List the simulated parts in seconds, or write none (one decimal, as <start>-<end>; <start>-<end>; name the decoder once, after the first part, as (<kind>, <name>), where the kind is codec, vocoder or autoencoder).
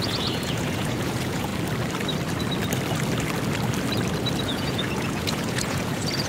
0.0-1.5 (vocoder, Vocos); 4.4-6.3